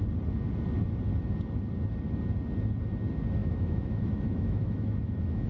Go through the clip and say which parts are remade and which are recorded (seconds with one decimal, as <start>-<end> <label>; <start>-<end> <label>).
0.0-3.4 recorded; 3.4-5.5 remade

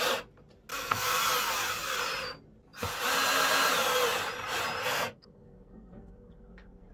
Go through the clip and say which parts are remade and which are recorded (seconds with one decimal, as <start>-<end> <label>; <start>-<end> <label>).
0.0-0.7 recorded; 0.7-1.2 remade; 1.2-4.8 recorded; 4.8-6.9 remade

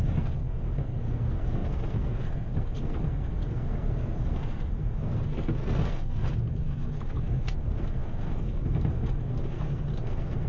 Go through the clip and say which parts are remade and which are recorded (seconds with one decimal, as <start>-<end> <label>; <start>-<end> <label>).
0.0-10.5 remade

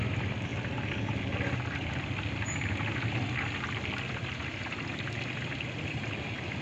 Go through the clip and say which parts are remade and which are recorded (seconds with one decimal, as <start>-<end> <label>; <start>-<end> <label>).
0.0-0.5 recorded; 0.5-1.2 remade; 1.2-6.6 recorded

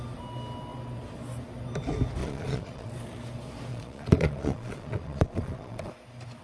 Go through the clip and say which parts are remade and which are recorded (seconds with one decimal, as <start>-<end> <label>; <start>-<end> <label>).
0.0-2.2 recorded; 2.2-2.9 remade; 2.9-3.7 recorded; 3.7-5.9 remade; 5.9-6.4 recorded

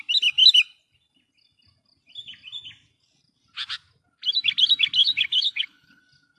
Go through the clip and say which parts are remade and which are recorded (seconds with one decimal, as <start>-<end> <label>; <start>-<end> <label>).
0.0-5.0 recorded; 5.0-6.0 remade; 6.0-6.4 recorded

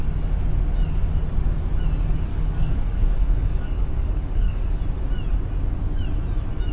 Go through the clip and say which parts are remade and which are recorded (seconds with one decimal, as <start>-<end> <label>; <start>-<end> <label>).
0.0-2.3 recorded; 2.3-4.8 remade; 4.8-6.7 recorded

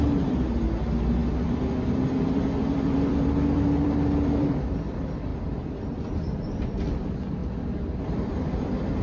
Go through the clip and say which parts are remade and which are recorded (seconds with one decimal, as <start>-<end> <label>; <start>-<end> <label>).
0.0-1.2 recorded; 1.2-4.6 remade; 4.6-7.4 recorded; 7.4-8.3 remade; 8.3-9.0 recorded